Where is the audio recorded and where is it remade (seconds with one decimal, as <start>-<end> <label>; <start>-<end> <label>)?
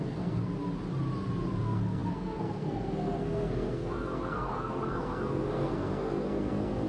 0.0-0.5 remade; 0.5-1.6 recorded; 1.6-6.9 remade